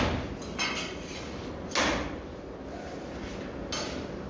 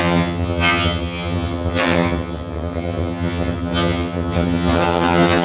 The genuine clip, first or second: first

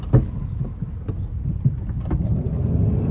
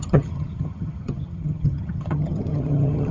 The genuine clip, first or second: first